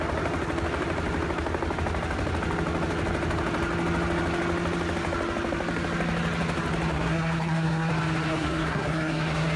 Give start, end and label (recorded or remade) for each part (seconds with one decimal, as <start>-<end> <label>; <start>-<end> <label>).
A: 0.0-6.9 recorded; 6.9-7.9 remade; 7.9-8.3 recorded; 8.3-9.6 remade